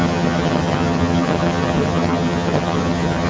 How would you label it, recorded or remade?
remade